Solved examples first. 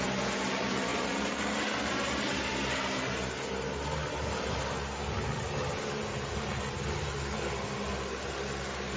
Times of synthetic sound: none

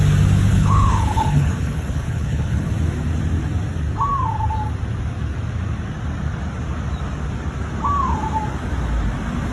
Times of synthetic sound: 0.5-2.7

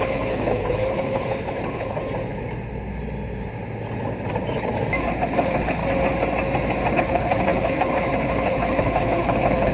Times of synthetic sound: 0.0-2.0; 5.3-5.8; 6.9-9.7

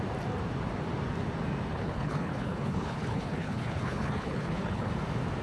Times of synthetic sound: 1.7-4.9

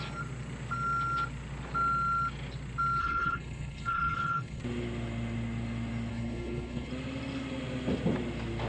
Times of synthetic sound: 3.0-4.6; 6.1-6.9

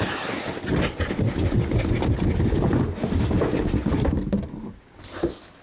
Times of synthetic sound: none

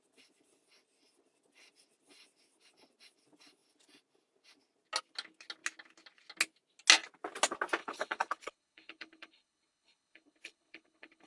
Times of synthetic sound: 7.8-11.3

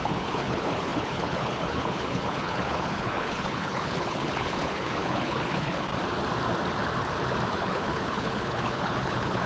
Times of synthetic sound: 0.0-5.9; 7.5-9.5